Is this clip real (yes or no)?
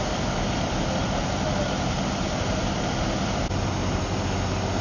yes